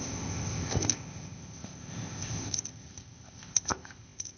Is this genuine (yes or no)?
no